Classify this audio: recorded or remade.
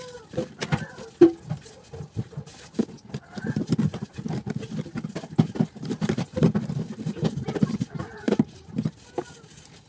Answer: recorded